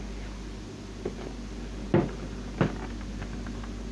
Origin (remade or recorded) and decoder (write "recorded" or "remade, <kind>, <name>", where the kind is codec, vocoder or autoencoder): recorded